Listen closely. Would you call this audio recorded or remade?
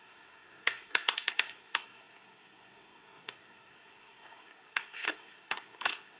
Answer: remade